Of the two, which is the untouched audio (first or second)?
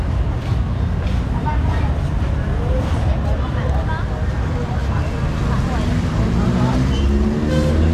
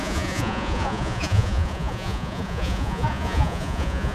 first